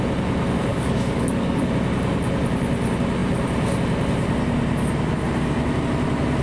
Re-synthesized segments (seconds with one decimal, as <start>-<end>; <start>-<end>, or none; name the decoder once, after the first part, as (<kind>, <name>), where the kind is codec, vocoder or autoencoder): 0.7-1.7 (codec, DAC)